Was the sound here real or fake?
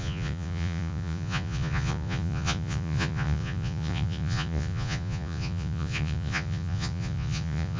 fake